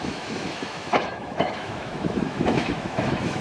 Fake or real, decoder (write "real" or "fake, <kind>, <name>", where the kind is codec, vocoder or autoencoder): fake, autoencoder, DAC-VAE